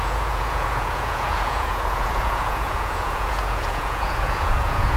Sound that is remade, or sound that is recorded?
remade